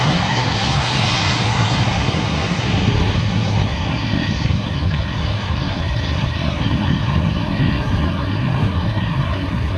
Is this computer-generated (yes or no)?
yes